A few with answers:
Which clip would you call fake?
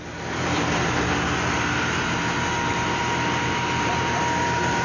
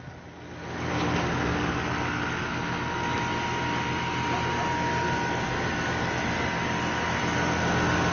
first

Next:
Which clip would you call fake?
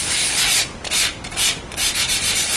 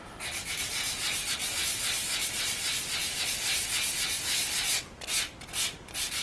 first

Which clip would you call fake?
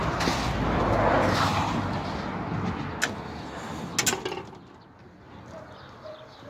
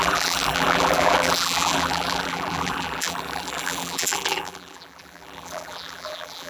second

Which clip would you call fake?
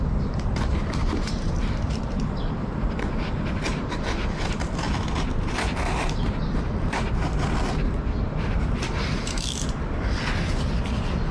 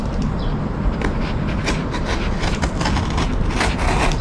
first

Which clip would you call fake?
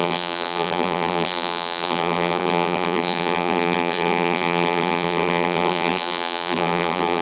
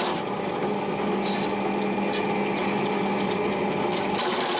first